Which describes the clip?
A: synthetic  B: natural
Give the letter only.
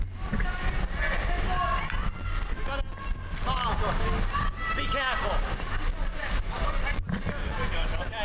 B